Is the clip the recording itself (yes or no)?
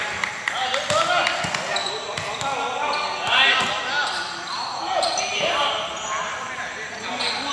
yes